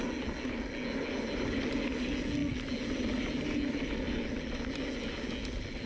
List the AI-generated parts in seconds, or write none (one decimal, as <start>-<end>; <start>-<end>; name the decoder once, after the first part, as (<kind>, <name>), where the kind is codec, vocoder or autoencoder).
none